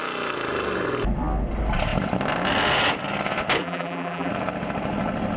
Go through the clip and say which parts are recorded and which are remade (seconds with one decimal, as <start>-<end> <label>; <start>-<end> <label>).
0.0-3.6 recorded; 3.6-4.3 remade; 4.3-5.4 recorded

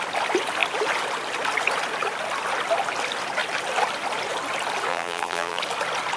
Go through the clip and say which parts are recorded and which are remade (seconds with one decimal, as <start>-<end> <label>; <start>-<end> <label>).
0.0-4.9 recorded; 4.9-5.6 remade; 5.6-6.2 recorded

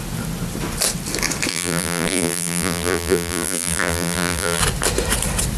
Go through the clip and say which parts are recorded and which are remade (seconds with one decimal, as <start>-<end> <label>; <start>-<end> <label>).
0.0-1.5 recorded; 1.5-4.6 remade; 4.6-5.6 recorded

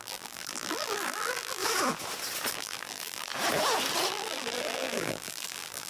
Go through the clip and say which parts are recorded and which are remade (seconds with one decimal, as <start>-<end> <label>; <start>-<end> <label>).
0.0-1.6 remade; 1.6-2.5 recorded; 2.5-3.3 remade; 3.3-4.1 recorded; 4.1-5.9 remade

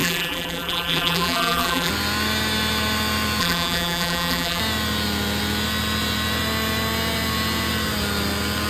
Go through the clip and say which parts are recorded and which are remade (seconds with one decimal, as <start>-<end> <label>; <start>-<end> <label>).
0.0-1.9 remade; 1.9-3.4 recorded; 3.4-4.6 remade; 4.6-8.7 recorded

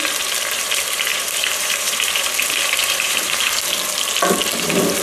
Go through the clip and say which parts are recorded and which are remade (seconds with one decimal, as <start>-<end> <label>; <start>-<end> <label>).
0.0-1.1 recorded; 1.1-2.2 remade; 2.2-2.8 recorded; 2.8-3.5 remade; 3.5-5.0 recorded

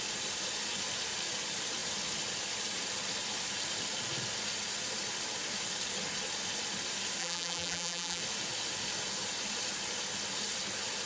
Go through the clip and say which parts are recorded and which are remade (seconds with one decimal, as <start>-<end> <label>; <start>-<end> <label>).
0.0-7.2 recorded; 7.2-8.2 remade; 8.2-11.1 recorded